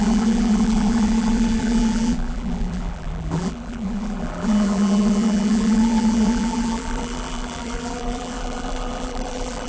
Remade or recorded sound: remade